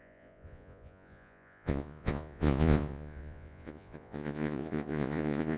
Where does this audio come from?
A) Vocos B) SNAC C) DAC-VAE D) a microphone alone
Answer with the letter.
A